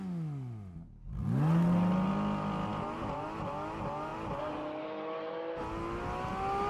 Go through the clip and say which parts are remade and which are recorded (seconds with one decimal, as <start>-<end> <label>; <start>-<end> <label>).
0.0-6.7 recorded